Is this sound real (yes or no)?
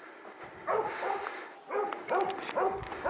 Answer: yes